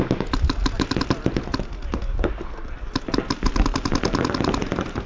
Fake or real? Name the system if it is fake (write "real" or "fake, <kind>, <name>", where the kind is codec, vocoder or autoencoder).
real